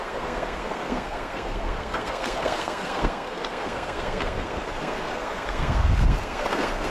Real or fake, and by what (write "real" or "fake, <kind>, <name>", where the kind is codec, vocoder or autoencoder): fake, codec, SNAC